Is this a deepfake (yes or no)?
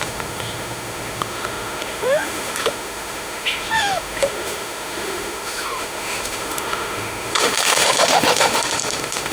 yes